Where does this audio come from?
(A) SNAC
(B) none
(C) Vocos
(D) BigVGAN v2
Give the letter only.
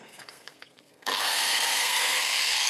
A